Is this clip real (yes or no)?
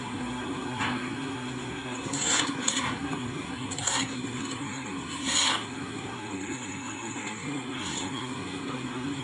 no